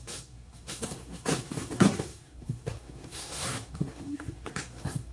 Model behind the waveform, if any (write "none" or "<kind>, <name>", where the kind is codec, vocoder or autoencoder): codec, SNAC